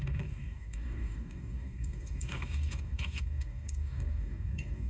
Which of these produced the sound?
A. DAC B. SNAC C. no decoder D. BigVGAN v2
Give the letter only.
A